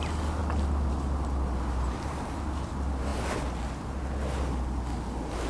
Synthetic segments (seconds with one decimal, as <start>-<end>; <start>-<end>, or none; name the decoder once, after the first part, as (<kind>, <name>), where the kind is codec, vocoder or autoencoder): none